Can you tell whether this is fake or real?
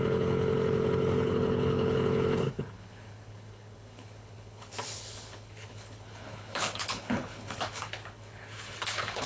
fake